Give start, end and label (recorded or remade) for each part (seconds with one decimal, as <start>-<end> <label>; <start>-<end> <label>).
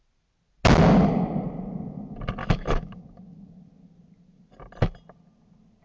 0.0-2.4 recorded; 2.4-3.0 remade; 3.0-5.8 recorded